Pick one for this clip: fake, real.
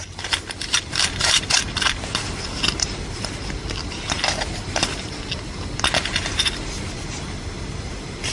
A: real